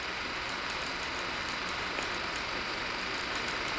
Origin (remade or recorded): remade